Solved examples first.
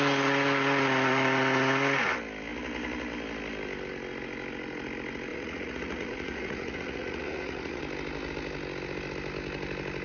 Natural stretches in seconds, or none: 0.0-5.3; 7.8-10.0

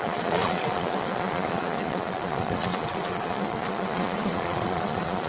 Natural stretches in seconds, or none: none

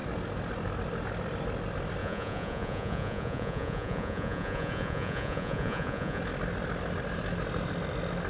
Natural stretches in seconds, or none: 0.0-2.0; 6.2-8.3

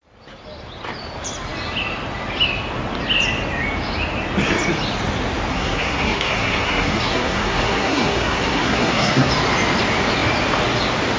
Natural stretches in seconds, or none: 0.0-5.5; 9.3-11.2

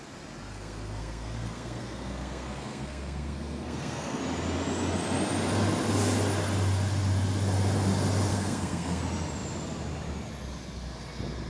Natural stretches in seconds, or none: 0.0-0.5; 4.2-8.3; 9.0-11.5